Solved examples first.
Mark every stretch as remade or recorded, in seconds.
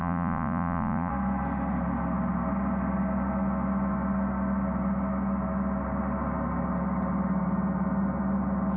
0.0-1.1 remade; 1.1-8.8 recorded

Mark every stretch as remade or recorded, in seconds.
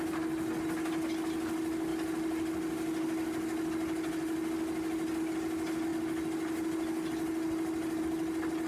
0.0-8.7 recorded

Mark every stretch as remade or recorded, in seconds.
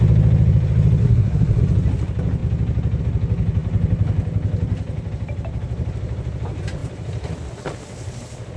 0.0-1.0 recorded; 1.0-1.6 remade; 1.6-8.6 recorded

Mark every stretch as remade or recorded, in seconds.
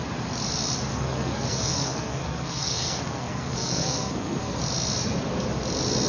0.0-0.9 recorded; 0.9-4.6 remade; 4.6-6.1 recorded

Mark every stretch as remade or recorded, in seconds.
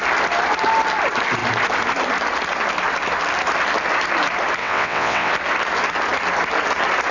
0.0-4.6 recorded; 4.6-5.3 remade; 5.3-7.1 recorded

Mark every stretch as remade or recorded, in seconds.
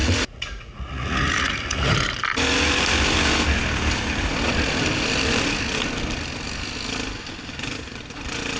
0.0-1.9 remade; 1.9-8.6 recorded